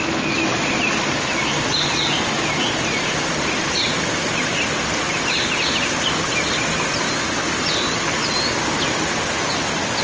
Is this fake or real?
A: real